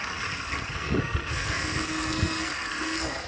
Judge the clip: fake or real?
fake